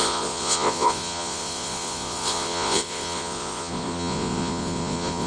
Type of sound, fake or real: fake